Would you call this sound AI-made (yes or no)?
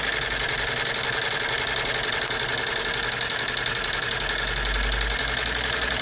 no